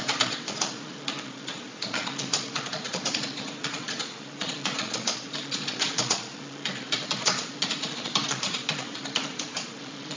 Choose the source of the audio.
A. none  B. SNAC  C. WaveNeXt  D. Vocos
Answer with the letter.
D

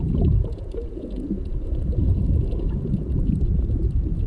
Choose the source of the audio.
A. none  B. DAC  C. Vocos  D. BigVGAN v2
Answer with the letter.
C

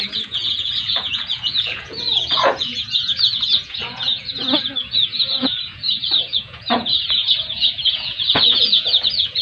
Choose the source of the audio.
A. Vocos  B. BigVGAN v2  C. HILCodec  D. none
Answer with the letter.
A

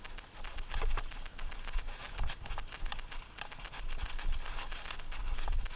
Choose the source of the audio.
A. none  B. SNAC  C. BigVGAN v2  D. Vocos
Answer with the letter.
A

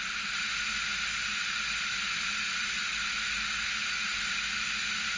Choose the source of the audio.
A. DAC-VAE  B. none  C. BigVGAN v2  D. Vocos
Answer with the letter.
B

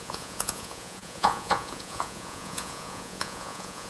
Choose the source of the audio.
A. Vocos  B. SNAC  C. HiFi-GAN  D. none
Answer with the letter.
A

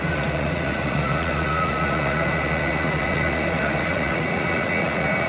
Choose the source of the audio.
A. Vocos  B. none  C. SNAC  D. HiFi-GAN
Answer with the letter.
A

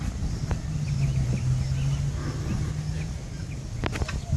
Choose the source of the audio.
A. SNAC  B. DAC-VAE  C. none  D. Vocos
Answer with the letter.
C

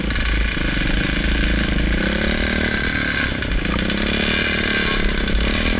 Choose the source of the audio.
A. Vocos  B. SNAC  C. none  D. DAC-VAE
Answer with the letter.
C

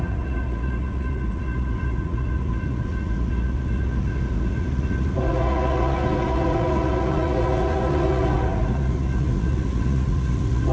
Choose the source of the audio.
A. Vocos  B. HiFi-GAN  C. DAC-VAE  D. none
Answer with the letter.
A